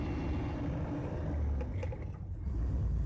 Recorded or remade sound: recorded